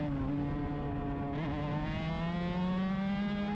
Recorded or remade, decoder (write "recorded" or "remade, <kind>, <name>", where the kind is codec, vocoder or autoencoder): recorded